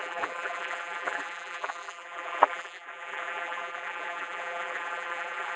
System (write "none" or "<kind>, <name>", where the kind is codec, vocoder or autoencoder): vocoder, BigVGAN v2